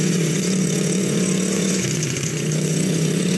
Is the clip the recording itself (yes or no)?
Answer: no